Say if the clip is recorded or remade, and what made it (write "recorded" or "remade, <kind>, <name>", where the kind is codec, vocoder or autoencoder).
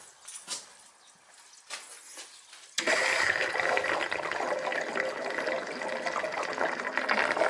recorded